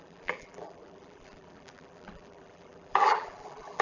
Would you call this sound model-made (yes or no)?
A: yes